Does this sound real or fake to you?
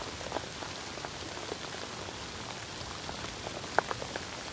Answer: real